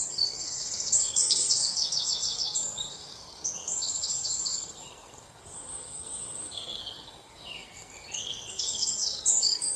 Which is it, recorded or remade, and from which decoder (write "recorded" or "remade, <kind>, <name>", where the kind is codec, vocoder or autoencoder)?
remade, codec, SNAC